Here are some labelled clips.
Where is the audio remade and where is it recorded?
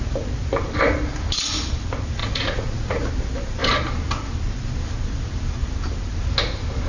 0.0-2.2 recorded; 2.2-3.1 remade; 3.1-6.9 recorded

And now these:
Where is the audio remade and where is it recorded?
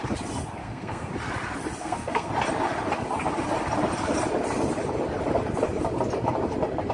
0.0-0.6 recorded; 0.6-1.1 remade; 1.1-1.8 recorded; 1.8-2.3 remade; 2.3-6.9 recorded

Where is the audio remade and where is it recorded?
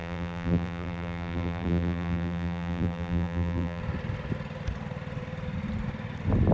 0.0-3.8 remade; 3.8-6.5 recorded